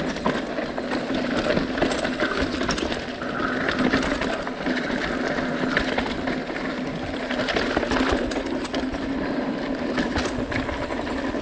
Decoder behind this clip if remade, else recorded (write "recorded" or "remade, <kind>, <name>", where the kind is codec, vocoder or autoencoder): recorded